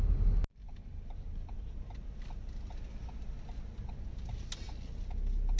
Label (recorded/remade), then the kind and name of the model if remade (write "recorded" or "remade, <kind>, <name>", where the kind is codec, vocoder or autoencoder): recorded